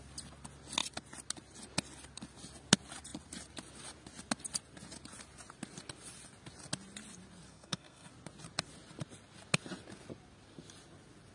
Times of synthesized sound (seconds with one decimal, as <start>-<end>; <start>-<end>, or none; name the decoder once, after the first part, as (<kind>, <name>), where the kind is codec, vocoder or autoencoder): 7.5-8.1 (codec, SNAC)